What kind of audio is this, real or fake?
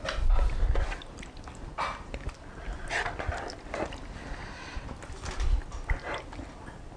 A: real